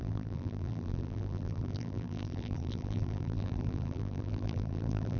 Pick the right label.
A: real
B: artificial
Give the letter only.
B